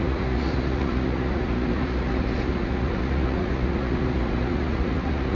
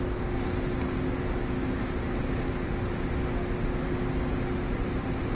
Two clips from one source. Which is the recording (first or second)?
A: second